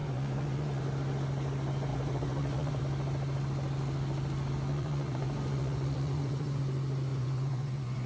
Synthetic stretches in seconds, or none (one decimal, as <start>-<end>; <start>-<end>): 0.0-0.8; 1.9-2.8; 4.7-6.6; 7.1-8.1